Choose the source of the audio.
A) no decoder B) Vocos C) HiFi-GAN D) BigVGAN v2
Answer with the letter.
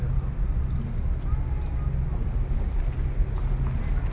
A